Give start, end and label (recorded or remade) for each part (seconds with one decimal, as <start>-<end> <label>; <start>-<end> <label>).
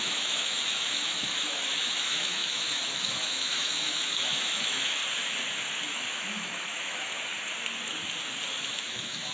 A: 0.0-5.0 remade; 5.0-5.9 recorded; 5.9-7.1 remade; 7.1-8.6 recorded; 8.6-9.3 remade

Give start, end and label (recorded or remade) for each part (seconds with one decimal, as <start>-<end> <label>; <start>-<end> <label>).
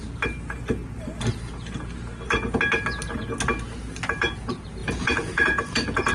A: 0.0-4.8 recorded; 4.8-6.1 remade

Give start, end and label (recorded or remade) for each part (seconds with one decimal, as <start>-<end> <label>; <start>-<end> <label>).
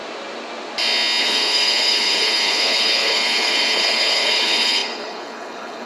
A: 0.0-1.2 recorded; 1.2-5.9 remade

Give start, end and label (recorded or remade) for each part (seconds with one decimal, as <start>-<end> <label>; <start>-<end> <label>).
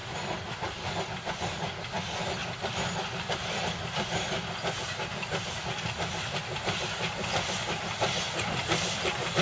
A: 0.0-9.4 recorded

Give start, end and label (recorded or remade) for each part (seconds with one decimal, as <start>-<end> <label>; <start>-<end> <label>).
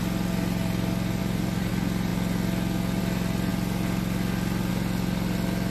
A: 0.0-1.2 recorded; 1.2-1.7 remade; 1.7-5.7 recorded